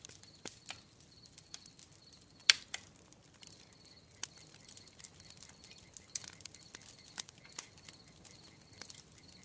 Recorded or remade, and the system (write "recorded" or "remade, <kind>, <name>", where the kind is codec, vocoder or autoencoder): recorded